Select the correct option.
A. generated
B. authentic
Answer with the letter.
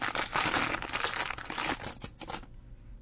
B